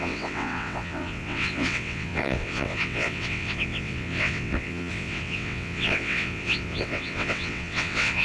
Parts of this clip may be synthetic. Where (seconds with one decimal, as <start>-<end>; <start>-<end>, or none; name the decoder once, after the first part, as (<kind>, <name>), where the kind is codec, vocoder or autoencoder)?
0.0-8.2 (vocoder, WaveNeXt)